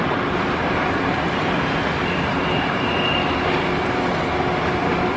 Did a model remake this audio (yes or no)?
no